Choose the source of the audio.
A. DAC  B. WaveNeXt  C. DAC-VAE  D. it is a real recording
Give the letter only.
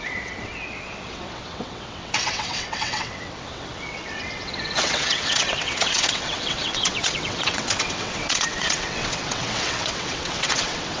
B